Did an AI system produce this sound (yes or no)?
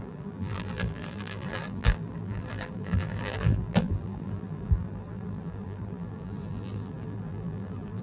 yes